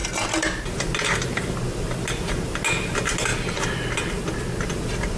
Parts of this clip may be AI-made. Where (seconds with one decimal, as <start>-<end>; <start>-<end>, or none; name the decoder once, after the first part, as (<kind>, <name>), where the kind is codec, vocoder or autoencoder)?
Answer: none